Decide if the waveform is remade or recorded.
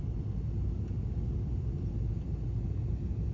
recorded